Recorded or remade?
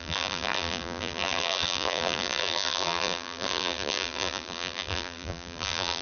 remade